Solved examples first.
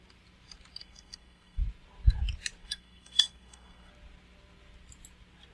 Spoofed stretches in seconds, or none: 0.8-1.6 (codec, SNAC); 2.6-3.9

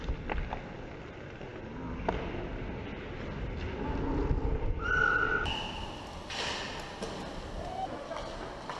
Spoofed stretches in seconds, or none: none

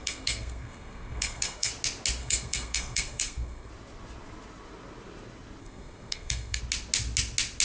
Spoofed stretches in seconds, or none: 0.0-1.7 (codec, SNAC); 2.2-3.7; 5.6-6.6

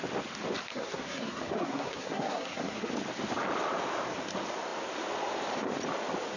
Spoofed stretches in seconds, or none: 0.7-2.9 (codec, SNAC)